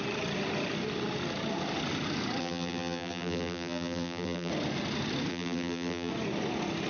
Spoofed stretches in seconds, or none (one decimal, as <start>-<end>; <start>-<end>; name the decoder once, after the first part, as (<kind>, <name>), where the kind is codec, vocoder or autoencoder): 2.4-4.5 (vocoder, BigVGAN v2); 5.3-6.1